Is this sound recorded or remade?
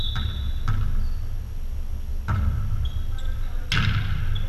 recorded